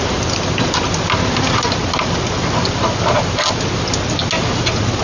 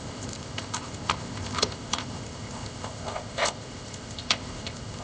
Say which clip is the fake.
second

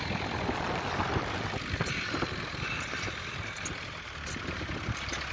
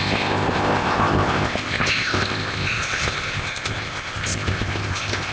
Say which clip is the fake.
second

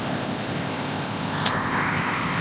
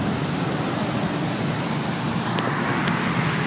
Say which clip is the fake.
first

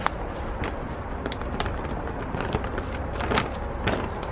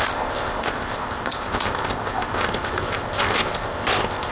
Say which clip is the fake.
second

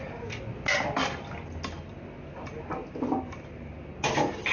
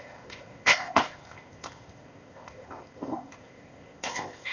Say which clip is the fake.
second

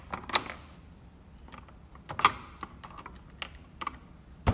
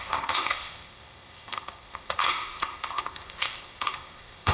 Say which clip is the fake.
second